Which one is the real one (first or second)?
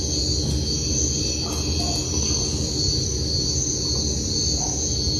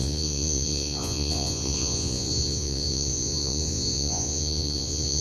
first